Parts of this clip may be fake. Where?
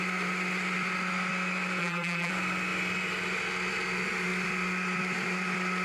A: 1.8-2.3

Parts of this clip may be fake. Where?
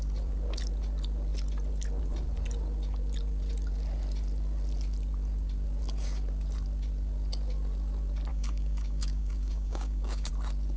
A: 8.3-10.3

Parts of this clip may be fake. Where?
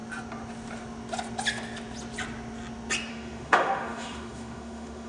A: 3.1-5.1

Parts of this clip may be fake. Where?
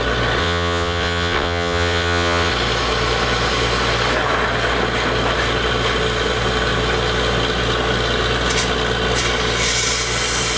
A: 0.4-2.5